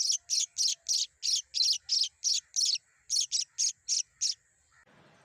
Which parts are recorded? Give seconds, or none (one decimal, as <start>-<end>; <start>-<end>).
0.0-5.2